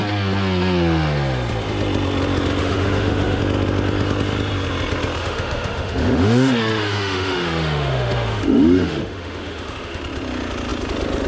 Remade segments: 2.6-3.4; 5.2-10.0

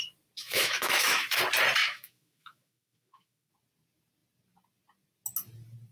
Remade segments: 0.4-1.4; 1.8-3.5

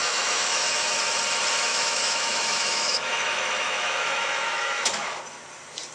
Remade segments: 0.0-1.0; 1.7-5.2

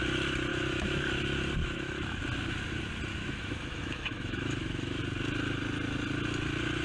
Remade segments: 0.5-1.1; 1.6-2.2; 3.1-5.0